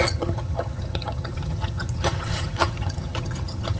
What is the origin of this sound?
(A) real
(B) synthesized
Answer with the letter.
B